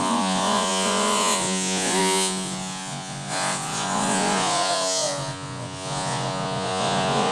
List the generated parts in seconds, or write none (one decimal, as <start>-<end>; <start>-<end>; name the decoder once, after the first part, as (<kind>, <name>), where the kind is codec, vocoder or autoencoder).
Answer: 0.0-7.3 (vocoder, Vocos)